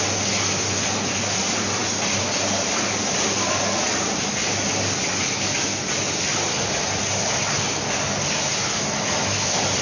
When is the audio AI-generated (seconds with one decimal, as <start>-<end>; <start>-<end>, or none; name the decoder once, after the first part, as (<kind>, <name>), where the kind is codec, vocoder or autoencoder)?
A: none